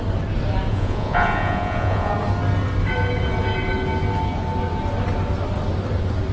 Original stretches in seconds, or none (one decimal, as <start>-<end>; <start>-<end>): 0.0-0.7; 2.1-6.3